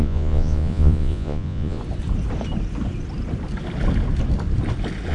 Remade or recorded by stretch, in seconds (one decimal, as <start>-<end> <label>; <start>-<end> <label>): 0.0-1.8 remade; 1.8-5.1 recorded